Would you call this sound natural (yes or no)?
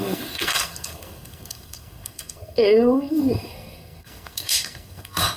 no